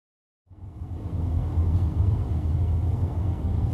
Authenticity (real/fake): fake